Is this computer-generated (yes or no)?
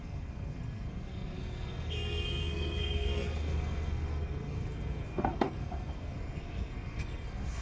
yes